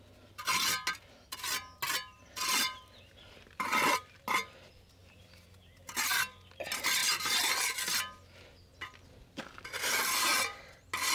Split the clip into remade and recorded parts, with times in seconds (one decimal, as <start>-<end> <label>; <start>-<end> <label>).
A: 0.0-5.0 recorded; 5.0-6.2 remade; 6.2-7.0 recorded; 7.0-7.5 remade; 7.5-11.1 recorded